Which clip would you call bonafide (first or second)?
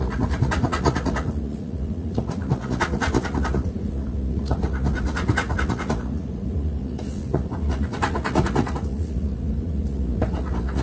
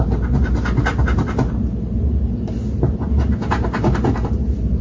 second